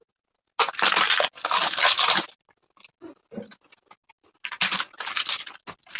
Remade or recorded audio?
recorded